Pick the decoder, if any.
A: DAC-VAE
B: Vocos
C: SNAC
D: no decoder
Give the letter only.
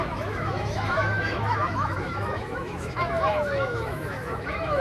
A